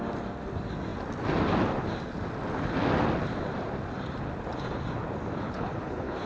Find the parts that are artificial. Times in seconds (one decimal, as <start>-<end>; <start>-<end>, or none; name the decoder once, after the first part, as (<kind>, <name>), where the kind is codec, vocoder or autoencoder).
5.4-6.3 (codec, HILCodec)

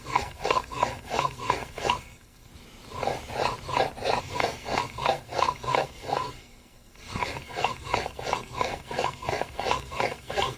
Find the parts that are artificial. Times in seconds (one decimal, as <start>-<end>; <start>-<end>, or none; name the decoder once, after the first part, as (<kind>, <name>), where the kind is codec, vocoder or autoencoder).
0.0-2.5 (codec, SNAC); 4.2-10.6